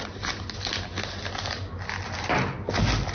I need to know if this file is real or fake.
real